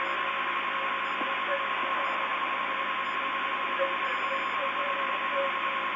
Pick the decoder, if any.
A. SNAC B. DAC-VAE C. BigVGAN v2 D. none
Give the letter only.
D